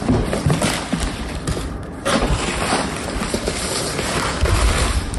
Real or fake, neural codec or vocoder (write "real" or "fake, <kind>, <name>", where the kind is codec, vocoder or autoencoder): fake, vocoder, BigVGAN v2